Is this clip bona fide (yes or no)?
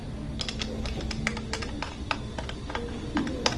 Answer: yes